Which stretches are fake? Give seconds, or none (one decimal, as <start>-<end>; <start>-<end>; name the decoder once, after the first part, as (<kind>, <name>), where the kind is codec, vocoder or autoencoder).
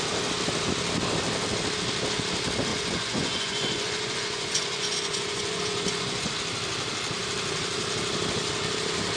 2.7-6.3 (vocoder, Vocos)